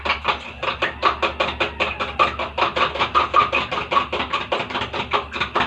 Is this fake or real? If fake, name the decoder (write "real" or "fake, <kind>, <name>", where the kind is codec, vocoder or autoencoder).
real